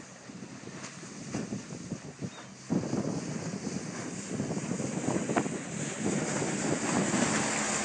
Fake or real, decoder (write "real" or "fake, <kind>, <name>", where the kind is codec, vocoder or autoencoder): real